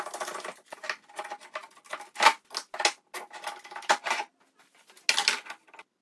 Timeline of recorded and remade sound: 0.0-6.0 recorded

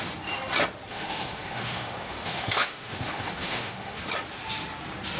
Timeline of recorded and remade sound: 0.0-0.9 recorded; 0.9-4.0 remade; 4.0-5.2 recorded

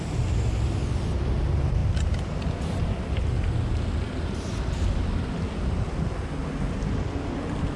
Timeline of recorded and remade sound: 0.0-7.8 recorded

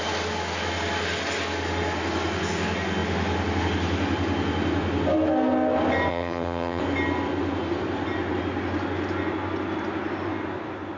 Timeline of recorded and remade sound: 0.0-6.1 recorded; 6.1-6.8 remade; 6.8-11.0 recorded

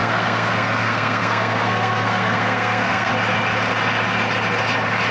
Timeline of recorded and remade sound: 0.0-3.1 remade; 3.1-5.1 recorded

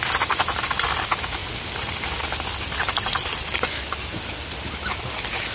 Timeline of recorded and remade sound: 0.0-1.4 recorded; 1.4-4.7 remade; 4.7-5.5 recorded